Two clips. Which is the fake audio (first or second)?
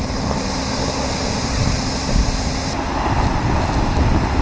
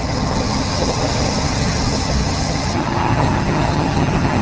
second